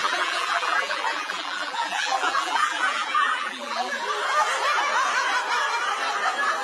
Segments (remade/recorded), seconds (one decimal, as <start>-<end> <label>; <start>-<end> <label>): 0.0-4.0 remade; 4.0-6.6 recorded

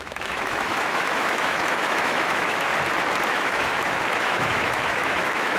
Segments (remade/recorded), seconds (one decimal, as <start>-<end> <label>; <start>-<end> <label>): 0.0-2.7 remade; 2.7-3.3 recorded; 3.3-5.6 remade

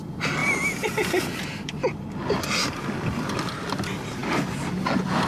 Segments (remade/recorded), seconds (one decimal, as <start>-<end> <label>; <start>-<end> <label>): 0.0-0.4 recorded; 0.4-2.7 remade; 2.7-4.2 recorded; 4.2-4.8 remade; 4.8-5.3 recorded

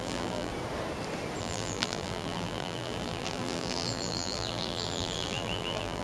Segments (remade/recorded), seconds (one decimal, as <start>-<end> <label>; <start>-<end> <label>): 0.0-0.5 remade; 0.5-1.4 recorded; 1.4-6.0 remade